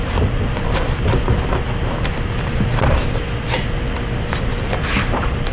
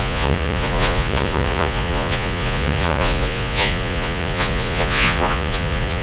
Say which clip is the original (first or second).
first